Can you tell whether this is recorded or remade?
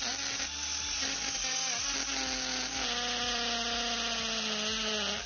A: recorded